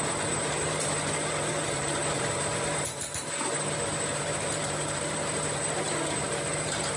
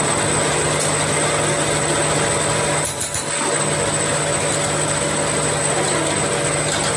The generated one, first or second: first